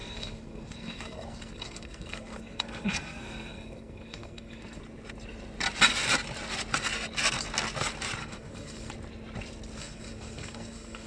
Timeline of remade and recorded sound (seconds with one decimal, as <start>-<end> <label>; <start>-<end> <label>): 0.0-4.8 remade; 4.8-8.2 recorded; 8.2-8.9 remade; 8.9-9.8 recorded; 9.8-11.1 remade